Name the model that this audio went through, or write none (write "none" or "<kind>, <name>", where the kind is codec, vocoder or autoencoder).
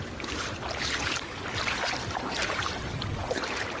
none